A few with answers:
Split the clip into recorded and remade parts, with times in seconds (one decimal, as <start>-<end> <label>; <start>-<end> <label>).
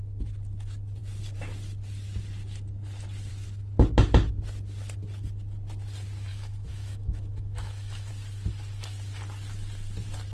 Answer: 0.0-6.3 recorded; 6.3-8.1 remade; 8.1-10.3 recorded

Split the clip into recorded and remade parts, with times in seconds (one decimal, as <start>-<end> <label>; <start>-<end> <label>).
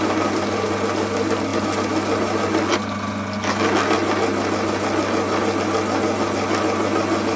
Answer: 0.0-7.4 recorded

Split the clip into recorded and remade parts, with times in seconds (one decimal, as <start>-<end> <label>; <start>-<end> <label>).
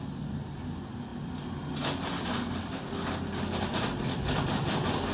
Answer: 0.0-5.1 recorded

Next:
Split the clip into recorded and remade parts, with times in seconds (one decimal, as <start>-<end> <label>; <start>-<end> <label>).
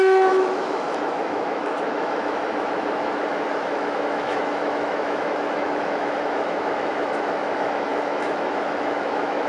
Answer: 0.0-9.5 remade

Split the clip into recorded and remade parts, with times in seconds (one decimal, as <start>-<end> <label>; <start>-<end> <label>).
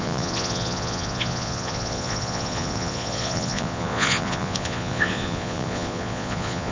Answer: 0.0-6.7 remade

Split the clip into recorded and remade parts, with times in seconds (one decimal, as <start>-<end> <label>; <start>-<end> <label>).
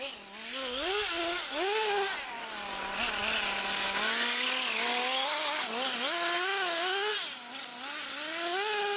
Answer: 0.0-9.0 recorded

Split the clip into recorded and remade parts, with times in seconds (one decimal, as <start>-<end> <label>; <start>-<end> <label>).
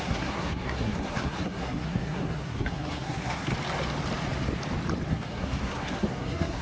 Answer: 0.0-3.5 remade; 3.5-5.1 recorded; 5.1-6.6 remade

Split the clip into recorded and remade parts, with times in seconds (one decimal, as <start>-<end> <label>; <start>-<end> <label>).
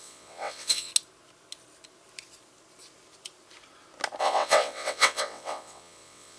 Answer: 0.0-0.9 remade; 0.9-4.2 recorded; 4.2-6.4 remade